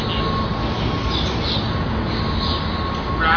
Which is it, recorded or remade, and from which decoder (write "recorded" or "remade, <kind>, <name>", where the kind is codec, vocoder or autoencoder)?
recorded